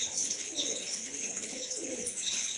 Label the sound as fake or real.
fake